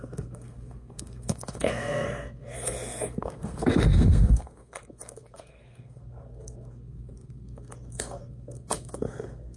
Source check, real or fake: fake